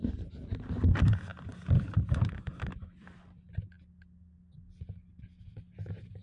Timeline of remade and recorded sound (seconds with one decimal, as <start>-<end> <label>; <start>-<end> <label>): 0.0-6.2 recorded